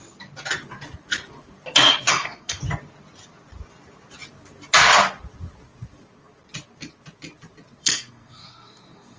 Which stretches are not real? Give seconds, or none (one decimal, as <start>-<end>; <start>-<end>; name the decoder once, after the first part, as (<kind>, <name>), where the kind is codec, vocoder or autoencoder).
2.1-2.6 (codec, SNAC); 7.8-9.2